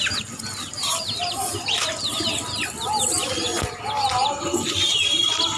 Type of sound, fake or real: real